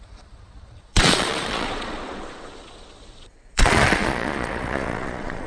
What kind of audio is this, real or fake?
fake